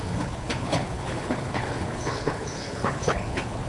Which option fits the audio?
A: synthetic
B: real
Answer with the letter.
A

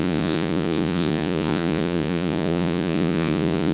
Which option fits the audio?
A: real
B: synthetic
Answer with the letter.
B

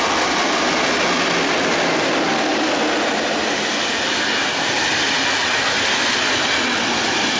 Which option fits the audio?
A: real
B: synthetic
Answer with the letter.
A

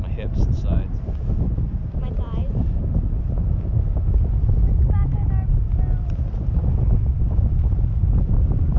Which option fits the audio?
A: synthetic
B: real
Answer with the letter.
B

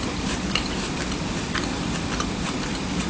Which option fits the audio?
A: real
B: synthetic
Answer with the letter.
B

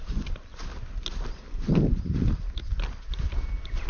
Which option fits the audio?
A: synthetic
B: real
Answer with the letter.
B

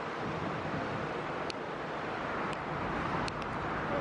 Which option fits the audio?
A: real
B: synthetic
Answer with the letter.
A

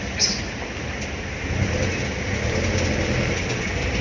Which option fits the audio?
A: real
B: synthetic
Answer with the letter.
A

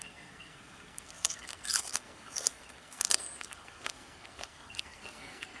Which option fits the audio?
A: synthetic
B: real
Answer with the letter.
A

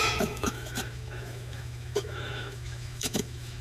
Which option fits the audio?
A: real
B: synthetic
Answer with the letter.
B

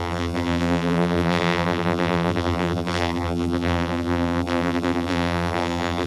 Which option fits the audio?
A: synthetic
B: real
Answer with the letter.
A